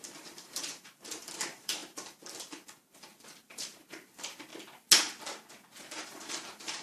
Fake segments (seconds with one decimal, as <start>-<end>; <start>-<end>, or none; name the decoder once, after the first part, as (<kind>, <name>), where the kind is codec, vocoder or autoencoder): 0.0-4.5 (vocoder, BigVGAN v2); 6.0-6.8